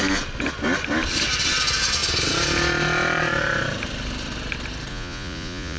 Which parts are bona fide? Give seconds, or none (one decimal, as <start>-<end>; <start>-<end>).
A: 0.0-4.9